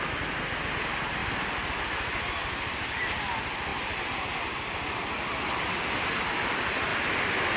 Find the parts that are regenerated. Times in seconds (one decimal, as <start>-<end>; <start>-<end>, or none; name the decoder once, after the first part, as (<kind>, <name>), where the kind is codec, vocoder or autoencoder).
1.2-1.8 (vocoder, BigVGAN v2); 2.4-3.1; 3.7-4.3; 6.9-7.6